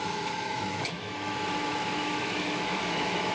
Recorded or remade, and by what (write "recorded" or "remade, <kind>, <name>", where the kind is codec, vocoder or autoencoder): remade, autoencoder, DAC-VAE